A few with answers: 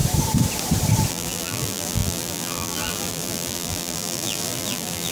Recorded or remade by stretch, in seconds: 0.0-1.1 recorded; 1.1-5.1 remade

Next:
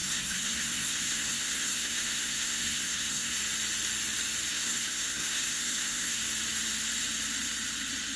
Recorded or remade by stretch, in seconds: 0.0-3.4 remade; 3.4-4.5 recorded; 4.5-6.2 remade; 6.2-8.2 recorded

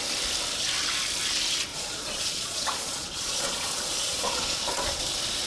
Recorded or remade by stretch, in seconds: 0.0-1.7 recorded; 1.7-5.0 remade; 5.0-5.5 recorded

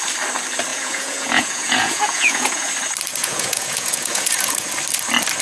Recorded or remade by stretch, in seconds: 0.0-0.7 recorded; 0.7-2.7 remade; 2.7-3.2 recorded; 3.2-4.7 remade; 4.7-5.4 recorded

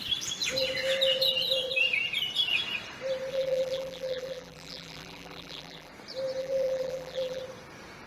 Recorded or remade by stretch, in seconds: 0.0-3.3 recorded; 3.3-5.9 remade; 5.9-6.4 recorded; 6.4-7.4 remade; 7.4-8.1 recorded